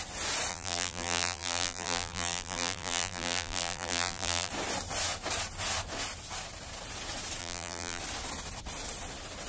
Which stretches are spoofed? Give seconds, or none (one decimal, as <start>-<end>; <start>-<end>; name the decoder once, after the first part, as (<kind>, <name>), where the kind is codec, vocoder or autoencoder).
0.5-4.5 (vocoder, BigVGAN v2); 7.4-8.0